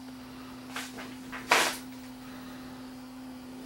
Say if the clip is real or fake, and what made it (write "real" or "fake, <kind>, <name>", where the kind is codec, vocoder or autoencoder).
real